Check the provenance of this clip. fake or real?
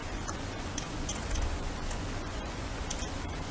fake